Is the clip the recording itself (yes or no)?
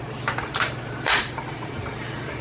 no